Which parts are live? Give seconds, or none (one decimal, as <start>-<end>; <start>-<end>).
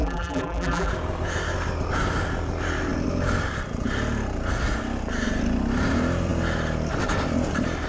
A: 0.9-7.9